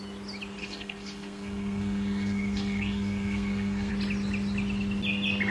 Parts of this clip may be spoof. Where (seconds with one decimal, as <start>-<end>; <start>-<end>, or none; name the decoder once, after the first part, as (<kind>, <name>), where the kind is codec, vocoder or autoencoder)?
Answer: 0.6-3.9 (codec, SNAC)